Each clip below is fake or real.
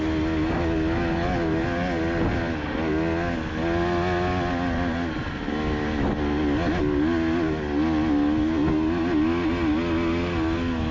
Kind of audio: real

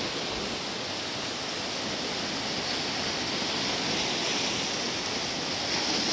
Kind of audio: real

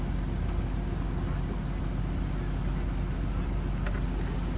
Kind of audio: real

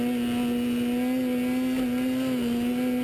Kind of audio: real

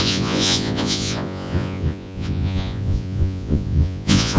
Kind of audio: fake